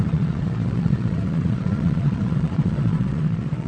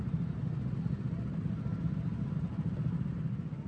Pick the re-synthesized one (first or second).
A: first